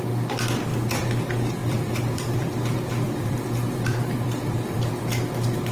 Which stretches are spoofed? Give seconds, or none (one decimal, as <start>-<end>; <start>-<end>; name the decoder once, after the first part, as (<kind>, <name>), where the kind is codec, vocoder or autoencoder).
0.7-1.2 (vocoder, BigVGAN v2); 1.6-4.9